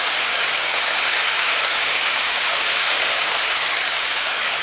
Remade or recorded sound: remade